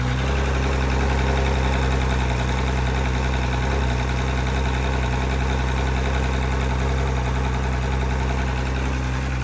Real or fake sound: real